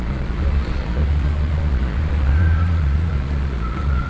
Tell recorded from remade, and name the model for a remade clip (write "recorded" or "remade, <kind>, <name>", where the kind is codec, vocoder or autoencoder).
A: remade, vocoder, Vocos